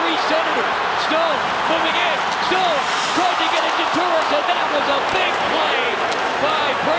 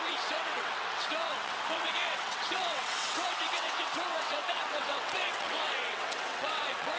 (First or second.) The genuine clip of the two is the first